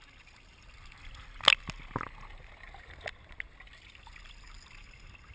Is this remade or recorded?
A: recorded